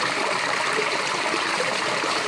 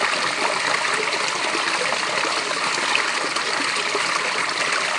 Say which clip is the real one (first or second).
second